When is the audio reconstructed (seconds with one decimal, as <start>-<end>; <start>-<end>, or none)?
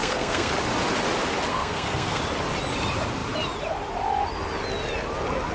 0.0-0.5; 1.5-2.2